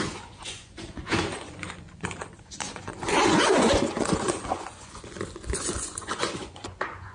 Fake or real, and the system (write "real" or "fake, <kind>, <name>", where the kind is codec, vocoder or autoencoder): fake, vocoder, Vocos